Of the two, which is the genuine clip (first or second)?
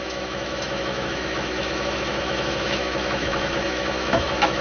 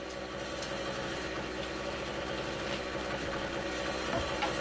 second